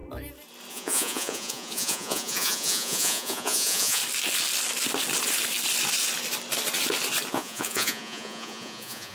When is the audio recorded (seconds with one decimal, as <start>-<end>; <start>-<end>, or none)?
0.0-0.7; 4.0-7.3